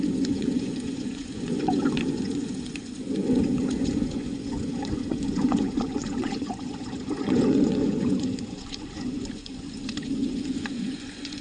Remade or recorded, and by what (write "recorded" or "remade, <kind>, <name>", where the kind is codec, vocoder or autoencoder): remade, vocoder, Vocos